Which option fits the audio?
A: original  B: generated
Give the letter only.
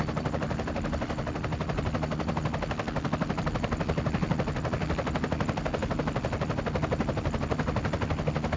A